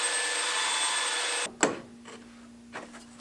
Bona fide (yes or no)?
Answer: yes